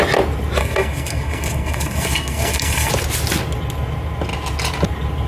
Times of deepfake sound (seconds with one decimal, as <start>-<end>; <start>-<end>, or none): 0.6-2.9